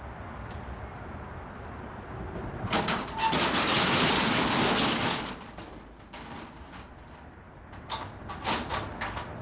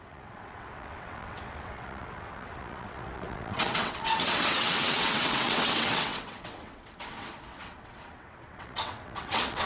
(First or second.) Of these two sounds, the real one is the first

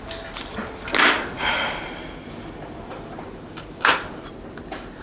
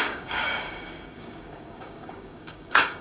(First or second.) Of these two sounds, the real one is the first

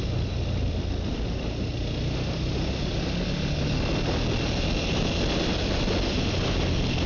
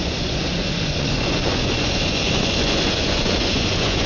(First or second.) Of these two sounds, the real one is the first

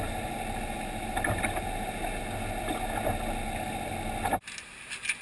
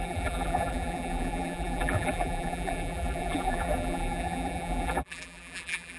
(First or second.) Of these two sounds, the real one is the first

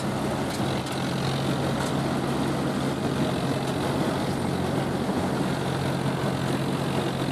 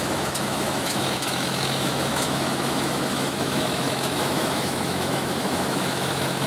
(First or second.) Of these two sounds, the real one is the first